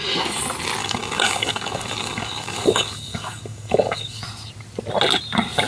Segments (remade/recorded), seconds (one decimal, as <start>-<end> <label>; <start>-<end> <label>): 0.0-0.8 recorded; 0.8-4.2 remade; 4.2-5.7 recorded

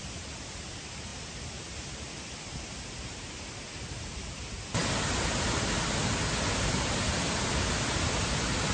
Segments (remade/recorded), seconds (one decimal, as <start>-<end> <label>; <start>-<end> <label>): 0.0-8.7 recorded